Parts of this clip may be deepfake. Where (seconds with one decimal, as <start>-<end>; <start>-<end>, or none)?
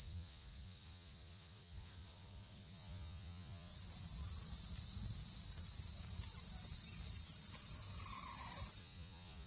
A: 0.0-3.7; 8.8-9.5